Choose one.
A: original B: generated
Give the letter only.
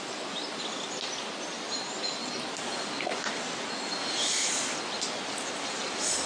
A